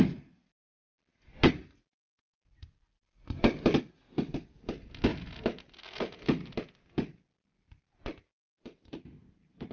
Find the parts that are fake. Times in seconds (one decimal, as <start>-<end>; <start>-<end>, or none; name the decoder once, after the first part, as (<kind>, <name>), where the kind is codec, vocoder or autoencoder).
none